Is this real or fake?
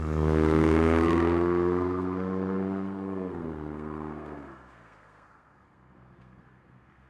fake